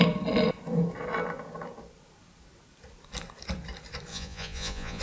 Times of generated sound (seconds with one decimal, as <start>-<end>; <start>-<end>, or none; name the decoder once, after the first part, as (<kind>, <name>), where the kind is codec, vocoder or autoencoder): 4.1-5.0 (vocoder, Vocos)